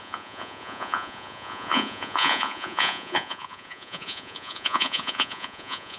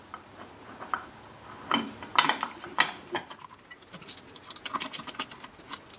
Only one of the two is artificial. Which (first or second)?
first